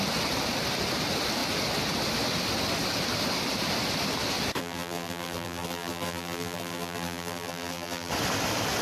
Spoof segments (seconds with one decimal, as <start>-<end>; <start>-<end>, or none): 4.6-8.1